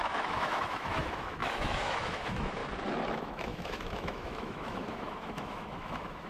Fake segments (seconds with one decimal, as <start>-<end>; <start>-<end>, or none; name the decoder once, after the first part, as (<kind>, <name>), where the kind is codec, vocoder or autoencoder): 0.0-2.6 (autoencoder, DAC-VAE); 3.1-6.3